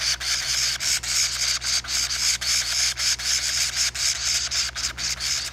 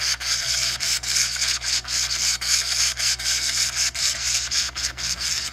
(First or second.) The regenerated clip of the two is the second